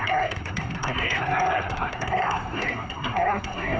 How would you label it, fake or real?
fake